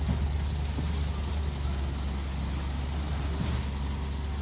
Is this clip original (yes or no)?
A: yes